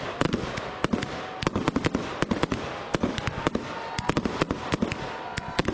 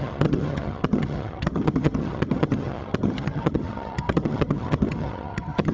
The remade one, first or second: second